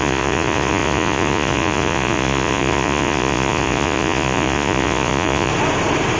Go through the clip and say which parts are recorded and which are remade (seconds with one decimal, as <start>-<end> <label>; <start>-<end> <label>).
0.0-5.5 remade; 5.5-6.2 recorded